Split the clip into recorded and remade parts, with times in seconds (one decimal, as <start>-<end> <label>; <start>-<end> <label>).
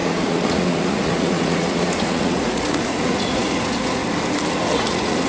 0.0-4.0 remade; 4.0-4.5 recorded; 4.5-5.3 remade